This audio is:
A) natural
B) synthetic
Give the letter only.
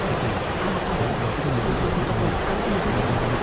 B